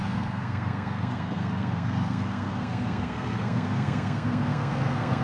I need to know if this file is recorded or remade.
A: remade